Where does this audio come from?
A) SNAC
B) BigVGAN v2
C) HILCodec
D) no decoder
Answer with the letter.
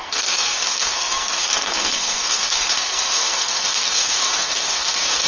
A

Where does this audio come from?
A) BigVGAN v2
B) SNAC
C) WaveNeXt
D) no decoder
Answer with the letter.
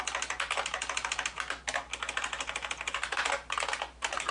D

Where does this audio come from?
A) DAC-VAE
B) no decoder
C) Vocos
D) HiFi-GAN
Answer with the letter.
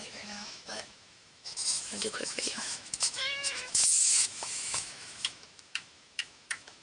A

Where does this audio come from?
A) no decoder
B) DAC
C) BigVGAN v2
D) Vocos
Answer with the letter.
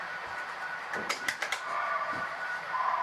C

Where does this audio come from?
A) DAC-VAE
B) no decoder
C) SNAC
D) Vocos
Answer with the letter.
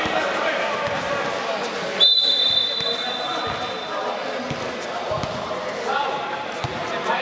B